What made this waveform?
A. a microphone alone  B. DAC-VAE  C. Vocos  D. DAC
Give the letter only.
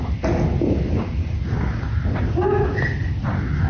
A